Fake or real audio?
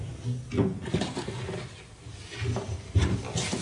real